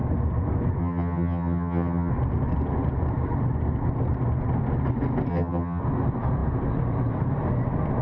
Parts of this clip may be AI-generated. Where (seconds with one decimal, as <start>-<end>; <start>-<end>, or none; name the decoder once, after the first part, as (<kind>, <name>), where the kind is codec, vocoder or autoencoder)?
0.8-2.1 (vocoder, HiFi-GAN); 5.3-5.8